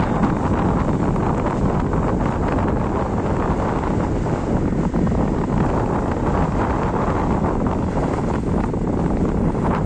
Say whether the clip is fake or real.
real